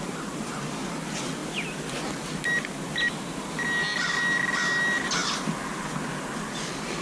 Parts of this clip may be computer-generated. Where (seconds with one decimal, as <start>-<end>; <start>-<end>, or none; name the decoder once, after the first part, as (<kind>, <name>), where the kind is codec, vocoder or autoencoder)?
none